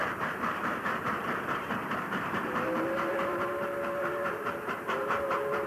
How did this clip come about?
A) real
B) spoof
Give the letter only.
B